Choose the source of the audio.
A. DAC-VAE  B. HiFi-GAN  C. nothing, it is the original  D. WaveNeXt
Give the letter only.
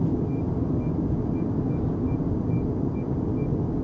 C